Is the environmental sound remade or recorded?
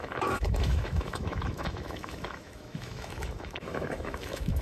remade